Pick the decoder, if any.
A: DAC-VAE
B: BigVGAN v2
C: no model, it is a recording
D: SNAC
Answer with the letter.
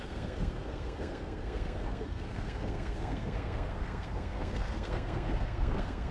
D